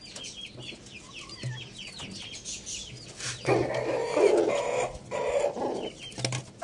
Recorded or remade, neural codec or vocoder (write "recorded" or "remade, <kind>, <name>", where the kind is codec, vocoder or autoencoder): recorded